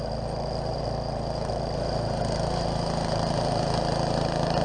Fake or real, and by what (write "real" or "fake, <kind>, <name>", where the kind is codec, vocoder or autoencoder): real